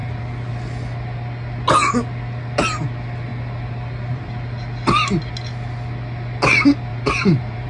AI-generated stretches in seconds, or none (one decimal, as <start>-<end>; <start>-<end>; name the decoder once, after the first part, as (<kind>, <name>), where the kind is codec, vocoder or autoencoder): 6.9-7.7 (vocoder, BigVGAN v2)